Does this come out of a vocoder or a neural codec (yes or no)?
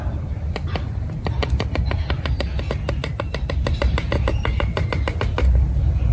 no